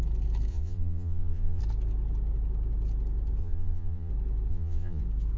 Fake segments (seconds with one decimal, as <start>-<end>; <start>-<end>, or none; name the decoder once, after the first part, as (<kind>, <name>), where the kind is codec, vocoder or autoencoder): 0.5-1.6 (vocoder, Vocos); 3.4-4.1; 4.5-5.0